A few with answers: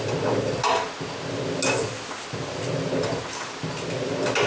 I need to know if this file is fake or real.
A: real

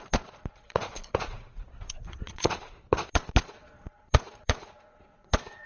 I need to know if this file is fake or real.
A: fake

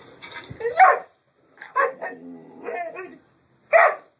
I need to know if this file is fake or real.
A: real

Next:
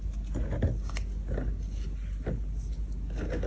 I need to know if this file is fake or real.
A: real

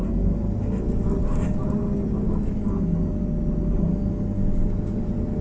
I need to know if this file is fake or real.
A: real